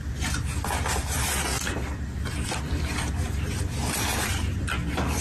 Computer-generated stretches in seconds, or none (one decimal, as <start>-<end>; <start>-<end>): 1.5-4.6

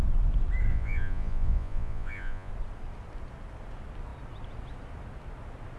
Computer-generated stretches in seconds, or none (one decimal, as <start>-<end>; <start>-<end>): 0.7-2.5

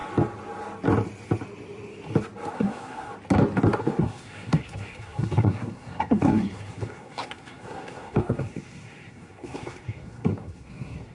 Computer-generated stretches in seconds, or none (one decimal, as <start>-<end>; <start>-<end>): 2.5-3.1; 3.8-11.1